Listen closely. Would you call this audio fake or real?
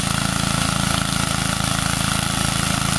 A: real